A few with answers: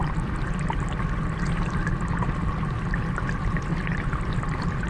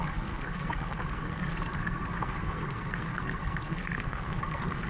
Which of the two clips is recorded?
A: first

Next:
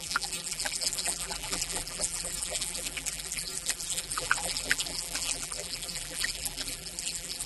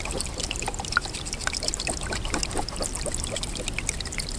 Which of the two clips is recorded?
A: second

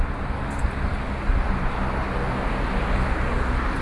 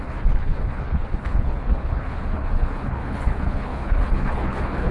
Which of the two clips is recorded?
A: first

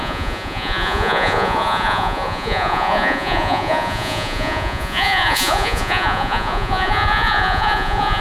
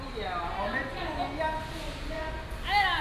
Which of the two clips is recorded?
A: second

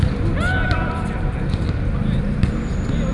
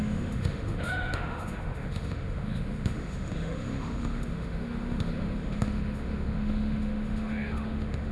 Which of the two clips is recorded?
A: first